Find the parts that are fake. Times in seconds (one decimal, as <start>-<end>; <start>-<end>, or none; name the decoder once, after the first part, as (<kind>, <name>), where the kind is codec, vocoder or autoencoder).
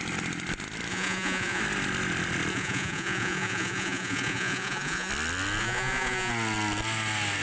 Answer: 0.9-1.6 (vocoder, Vocos); 2.5-5.1; 5.6-6.3